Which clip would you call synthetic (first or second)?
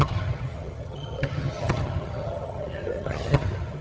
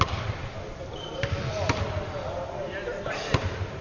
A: first